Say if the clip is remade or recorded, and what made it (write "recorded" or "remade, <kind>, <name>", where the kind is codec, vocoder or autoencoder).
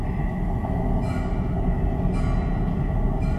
recorded